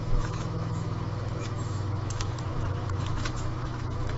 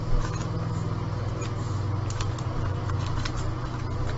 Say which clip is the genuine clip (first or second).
second